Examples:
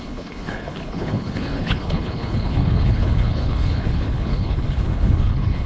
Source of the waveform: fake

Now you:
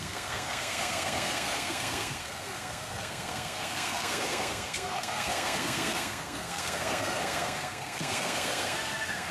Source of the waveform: fake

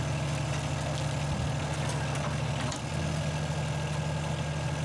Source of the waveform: real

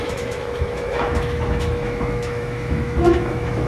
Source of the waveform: fake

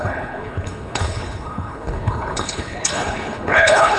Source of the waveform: fake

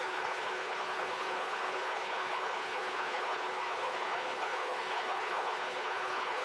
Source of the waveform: fake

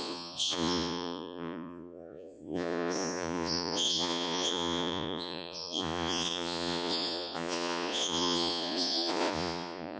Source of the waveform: fake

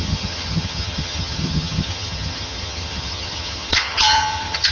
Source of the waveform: fake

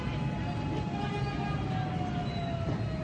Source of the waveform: real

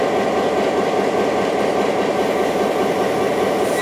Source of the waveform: real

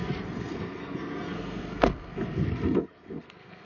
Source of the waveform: fake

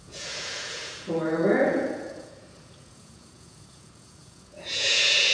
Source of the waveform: fake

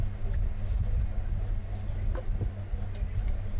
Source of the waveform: real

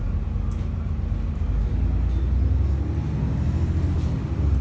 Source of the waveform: real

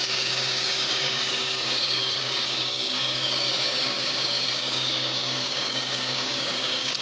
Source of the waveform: fake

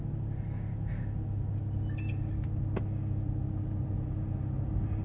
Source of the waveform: real